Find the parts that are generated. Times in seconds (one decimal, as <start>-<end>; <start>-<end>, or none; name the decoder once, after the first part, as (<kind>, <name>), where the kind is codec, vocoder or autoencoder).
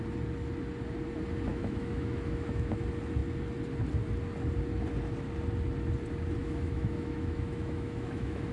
1.5-2.8 (autoencoder, DAC-VAE); 6.4-8.5